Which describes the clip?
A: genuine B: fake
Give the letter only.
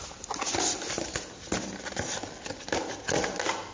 A